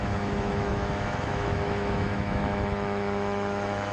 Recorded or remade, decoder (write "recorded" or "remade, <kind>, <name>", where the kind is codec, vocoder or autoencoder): remade, autoencoder, DAC-VAE